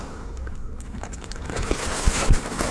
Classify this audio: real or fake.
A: fake